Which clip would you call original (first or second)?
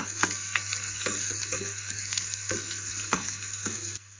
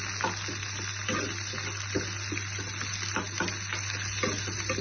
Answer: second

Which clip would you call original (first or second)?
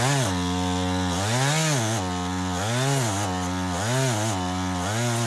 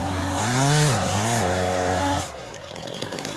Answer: first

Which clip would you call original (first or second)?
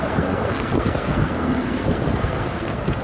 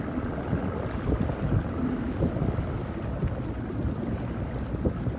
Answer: second